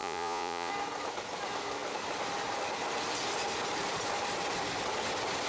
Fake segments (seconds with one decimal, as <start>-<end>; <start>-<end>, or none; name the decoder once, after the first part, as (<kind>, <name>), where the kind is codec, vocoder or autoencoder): 0.0-0.7 (vocoder, Vocos)